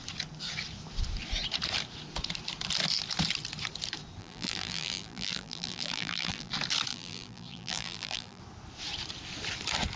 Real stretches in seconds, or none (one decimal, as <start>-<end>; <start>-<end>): 0.0-4.2; 6.5-6.9; 8.4-10.0